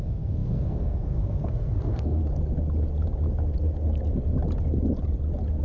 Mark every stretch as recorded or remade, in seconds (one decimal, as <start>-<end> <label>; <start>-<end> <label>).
0.0-2.2 remade; 2.2-5.6 recorded